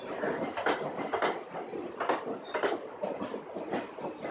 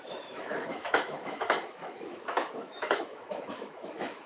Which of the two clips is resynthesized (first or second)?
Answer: second